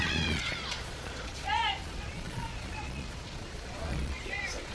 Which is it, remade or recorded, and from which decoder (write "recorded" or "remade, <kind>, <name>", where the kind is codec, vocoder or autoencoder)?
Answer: remade, vocoder, Vocos